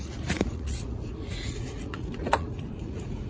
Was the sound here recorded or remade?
remade